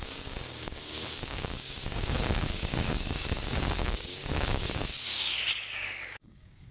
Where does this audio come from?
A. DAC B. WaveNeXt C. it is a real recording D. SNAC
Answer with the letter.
A